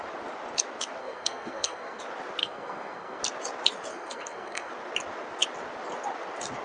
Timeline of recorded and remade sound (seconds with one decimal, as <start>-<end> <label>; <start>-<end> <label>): 0.0-1.0 recorded; 1.0-2.0 remade; 2.0-2.4 recorded; 2.4-3.2 remade; 3.2-3.9 recorded; 3.9-4.7 remade; 4.7-6.6 recorded